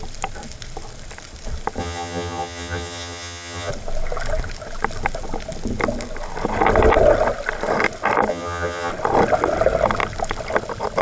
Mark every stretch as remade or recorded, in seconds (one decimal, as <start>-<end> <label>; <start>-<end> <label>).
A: 0.0-1.8 recorded; 1.8-3.7 remade; 3.7-8.3 recorded; 8.3-8.9 remade; 8.9-11.0 recorded